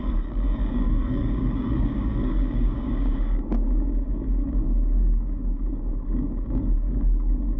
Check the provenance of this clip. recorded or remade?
remade